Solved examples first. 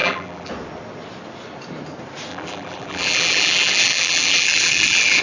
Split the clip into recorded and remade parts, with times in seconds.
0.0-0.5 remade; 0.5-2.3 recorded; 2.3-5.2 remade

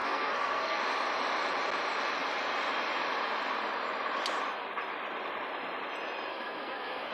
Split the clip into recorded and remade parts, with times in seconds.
0.0-0.8 remade; 0.8-6.3 recorded; 6.3-7.1 remade